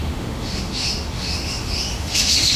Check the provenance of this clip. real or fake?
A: fake